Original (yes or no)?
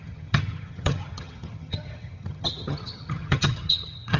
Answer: no